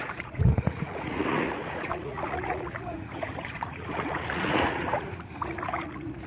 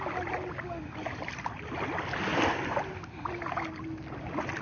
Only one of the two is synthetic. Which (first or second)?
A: first